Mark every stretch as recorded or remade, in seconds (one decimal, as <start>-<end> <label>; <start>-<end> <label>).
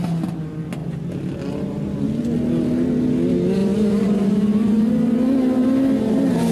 0.0-3.6 recorded; 3.6-4.9 remade; 4.9-6.5 recorded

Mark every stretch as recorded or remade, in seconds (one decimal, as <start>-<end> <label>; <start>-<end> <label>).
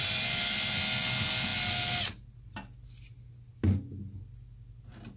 0.0-5.2 recorded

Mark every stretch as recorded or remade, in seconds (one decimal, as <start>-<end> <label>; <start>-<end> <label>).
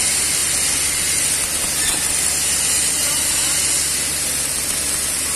0.0-5.4 recorded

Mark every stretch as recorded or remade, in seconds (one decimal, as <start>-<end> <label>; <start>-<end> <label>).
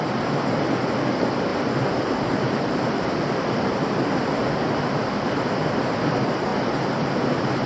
0.0-7.7 recorded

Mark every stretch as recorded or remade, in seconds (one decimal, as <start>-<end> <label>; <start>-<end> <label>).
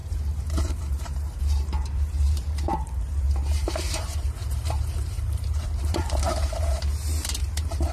0.0-7.9 remade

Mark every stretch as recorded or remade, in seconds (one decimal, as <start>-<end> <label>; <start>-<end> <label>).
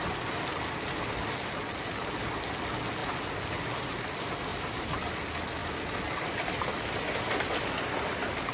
0.0-4.5 recorded; 4.5-5.1 remade; 5.1-8.5 recorded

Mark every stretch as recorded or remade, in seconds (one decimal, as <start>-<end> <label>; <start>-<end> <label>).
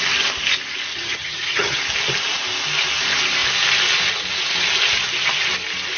0.0-0.9 recorded; 0.9-1.8 remade; 1.8-6.0 recorded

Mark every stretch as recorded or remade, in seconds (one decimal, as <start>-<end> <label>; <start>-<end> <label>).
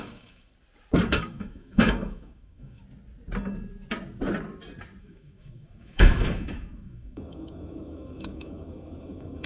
0.0-0.5 remade; 0.5-1.2 recorded; 1.2-2.8 remade; 2.8-5.0 recorded; 5.0-9.5 remade